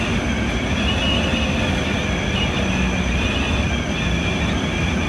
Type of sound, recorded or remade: recorded